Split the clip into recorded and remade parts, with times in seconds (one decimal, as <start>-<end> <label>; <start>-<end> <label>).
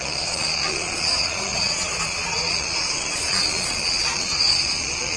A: 0.0-5.2 remade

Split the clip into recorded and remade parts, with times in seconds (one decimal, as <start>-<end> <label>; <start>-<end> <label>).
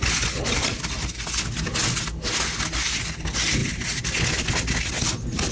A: 0.0-5.5 recorded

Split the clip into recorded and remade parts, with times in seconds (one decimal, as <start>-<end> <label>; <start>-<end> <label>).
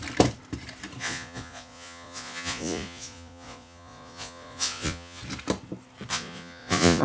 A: 0.0-1.0 recorded; 1.0-5.2 remade; 5.2-6.1 recorded; 6.1-7.0 remade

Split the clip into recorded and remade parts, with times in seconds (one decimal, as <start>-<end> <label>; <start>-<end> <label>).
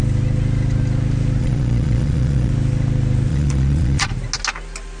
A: 0.0-1.4 recorded; 1.4-2.5 remade; 2.5-3.3 recorded; 3.3-4.1 remade; 4.1-5.0 recorded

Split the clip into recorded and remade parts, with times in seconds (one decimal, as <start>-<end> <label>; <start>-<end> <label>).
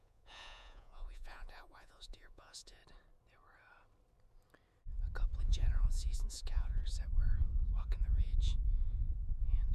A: 0.0-2.8 remade; 2.8-5.4 recorded; 5.4-6.8 remade; 6.8-7.8 recorded; 7.8-9.7 remade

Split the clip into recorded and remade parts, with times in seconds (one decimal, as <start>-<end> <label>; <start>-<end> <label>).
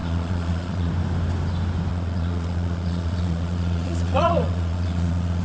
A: 0.0-0.9 remade; 0.9-1.9 recorded; 1.9-5.4 remade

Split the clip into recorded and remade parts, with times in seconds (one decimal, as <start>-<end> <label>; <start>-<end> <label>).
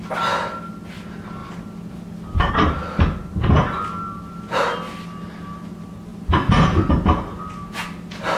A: 0.0-8.4 recorded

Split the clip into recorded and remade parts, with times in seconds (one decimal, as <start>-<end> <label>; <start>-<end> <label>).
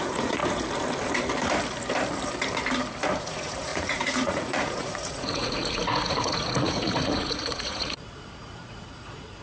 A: 0.0-0.4 remade; 0.4-3.2 recorded; 3.2-9.4 remade